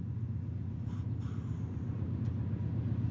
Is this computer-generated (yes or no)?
no